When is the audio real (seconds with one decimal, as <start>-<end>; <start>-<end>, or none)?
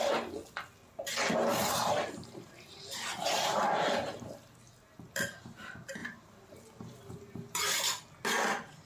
0.0-1.5; 4.3-6.0; 7.6-8.9